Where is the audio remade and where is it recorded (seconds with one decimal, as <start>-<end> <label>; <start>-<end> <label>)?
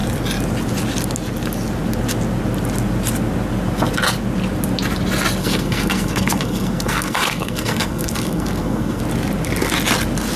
0.0-5.4 recorded; 5.4-9.0 remade; 9.0-10.4 recorded